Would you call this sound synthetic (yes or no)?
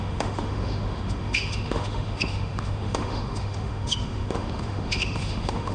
yes